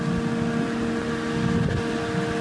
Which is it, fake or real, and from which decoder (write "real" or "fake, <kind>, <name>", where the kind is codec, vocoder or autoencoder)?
real